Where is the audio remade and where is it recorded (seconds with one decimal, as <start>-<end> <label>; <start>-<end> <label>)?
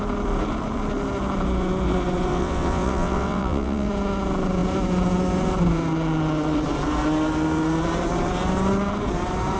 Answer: 0.0-2.3 recorded; 2.3-3.9 remade; 3.9-9.6 recorded